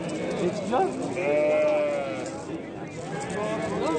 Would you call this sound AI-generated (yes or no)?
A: no